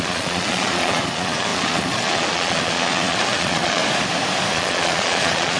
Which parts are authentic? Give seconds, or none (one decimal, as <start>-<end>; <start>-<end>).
3.8-4.5